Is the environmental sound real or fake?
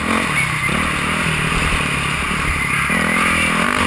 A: real